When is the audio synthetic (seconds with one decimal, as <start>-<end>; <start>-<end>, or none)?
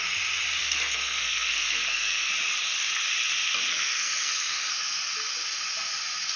0.6-2.3; 3.7-4.7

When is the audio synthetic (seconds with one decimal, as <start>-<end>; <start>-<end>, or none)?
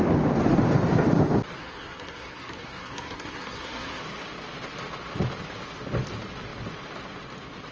1.6-4.0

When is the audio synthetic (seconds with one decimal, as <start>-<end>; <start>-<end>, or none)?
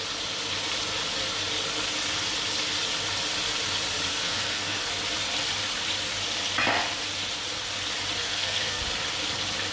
4.1-4.9; 8.2-8.8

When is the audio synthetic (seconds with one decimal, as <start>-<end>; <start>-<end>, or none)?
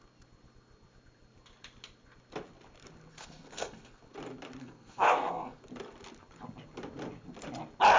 3.1-4.0; 4.6-5.6